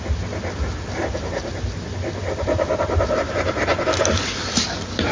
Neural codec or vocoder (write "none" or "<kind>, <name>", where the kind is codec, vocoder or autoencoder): none